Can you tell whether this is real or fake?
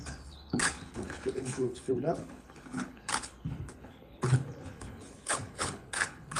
fake